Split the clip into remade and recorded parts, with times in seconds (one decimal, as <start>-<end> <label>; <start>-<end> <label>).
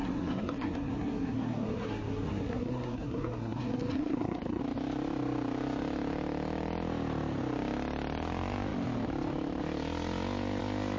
0.0-4.6 remade; 4.6-11.0 recorded